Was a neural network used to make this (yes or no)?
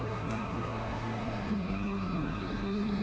yes